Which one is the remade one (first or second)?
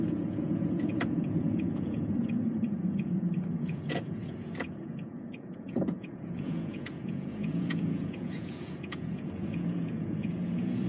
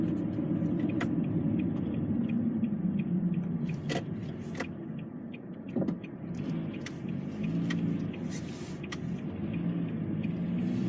first